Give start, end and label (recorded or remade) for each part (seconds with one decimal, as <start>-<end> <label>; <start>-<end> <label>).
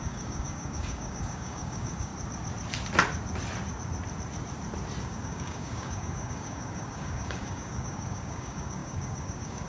0.0-2.1 remade; 2.1-5.0 recorded; 5.0-9.7 remade